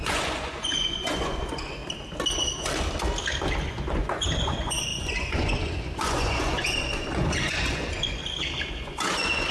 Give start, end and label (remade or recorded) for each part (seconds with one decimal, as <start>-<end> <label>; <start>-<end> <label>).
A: 0.0-1.8 remade; 1.8-3.7 recorded; 3.7-8.2 remade; 8.2-8.7 recorded; 8.7-9.5 remade